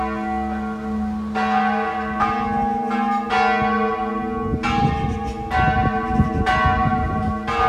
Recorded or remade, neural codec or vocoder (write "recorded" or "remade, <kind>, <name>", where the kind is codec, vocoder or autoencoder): recorded